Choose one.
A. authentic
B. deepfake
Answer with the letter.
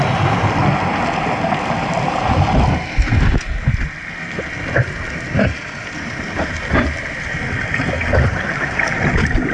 A